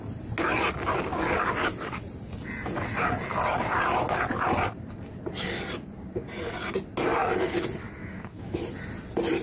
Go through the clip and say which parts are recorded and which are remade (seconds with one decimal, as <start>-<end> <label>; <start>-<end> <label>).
0.0-8.0 recorded; 8.0-8.6 remade; 8.6-9.4 recorded